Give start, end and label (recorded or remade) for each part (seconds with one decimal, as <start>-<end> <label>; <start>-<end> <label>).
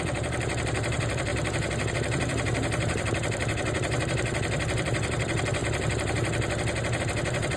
0.0-1.3 remade; 1.3-1.9 recorded; 1.9-5.6 remade; 5.6-7.0 recorded; 7.0-7.6 remade